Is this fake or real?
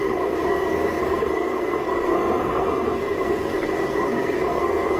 fake